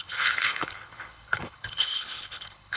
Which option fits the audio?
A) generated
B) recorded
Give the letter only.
A